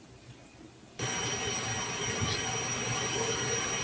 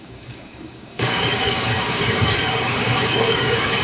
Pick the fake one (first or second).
second